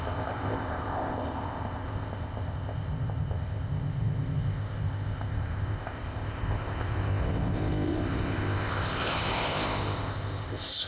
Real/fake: fake